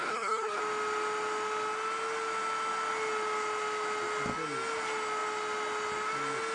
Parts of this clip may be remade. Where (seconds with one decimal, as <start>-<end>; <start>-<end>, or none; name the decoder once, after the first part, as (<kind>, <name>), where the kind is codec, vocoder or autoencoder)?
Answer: 0.0-0.6 (codec, SNAC)